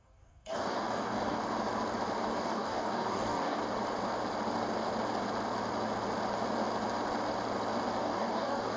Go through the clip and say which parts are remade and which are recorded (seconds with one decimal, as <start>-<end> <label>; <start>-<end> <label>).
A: 0.0-1.4 remade; 1.4-2.4 recorded; 2.4-3.6 remade; 3.6-8.0 recorded; 8.0-8.8 remade